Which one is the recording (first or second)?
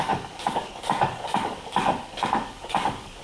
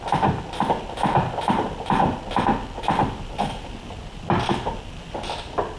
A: second